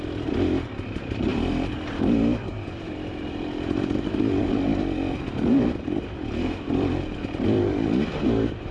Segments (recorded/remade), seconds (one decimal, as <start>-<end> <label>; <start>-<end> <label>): 0.0-8.7 remade